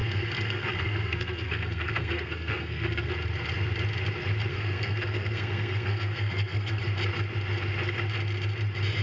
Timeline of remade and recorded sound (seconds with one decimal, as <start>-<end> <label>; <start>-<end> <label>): 0.0-3.1 remade; 3.1-4.5 recorded; 4.5-6.8 remade; 6.8-9.0 recorded